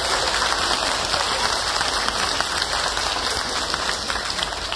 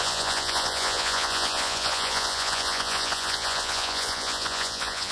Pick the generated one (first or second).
second